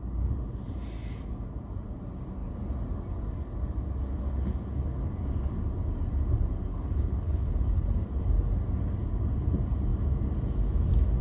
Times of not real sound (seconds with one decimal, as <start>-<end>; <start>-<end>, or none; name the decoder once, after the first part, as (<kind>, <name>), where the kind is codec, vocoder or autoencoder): 6.7-7.9 (codec, HILCodec)